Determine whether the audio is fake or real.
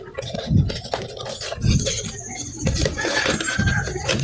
real